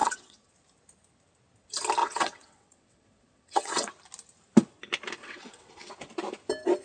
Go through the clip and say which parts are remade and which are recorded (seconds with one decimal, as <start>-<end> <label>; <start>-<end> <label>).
0.0-0.5 remade; 0.5-2.0 recorded; 2.0-3.9 remade; 3.9-5.2 recorded; 5.2-5.9 remade; 5.9-6.8 recorded